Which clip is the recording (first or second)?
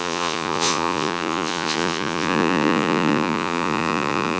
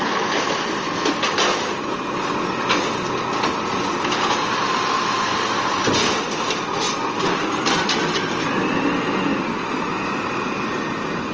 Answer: second